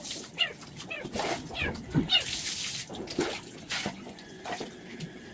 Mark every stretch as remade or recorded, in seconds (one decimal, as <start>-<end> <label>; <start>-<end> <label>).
0.0-3.7 recorded; 3.7-4.5 remade; 4.5-5.3 recorded